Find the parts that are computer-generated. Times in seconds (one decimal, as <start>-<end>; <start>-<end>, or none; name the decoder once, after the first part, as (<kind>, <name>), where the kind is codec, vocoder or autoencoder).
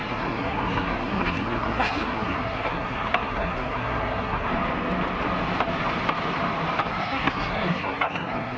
0.0-4.5 (codec, SNAC); 6.9-8.6